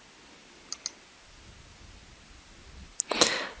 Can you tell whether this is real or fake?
real